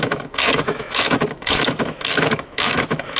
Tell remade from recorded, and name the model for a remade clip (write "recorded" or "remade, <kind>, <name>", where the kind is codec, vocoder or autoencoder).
remade, autoencoder, DAC-VAE